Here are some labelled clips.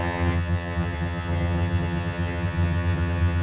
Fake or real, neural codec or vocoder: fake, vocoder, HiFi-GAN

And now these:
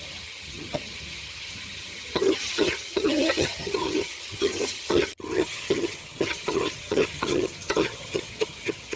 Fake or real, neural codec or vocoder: fake, vocoder, HiFi-GAN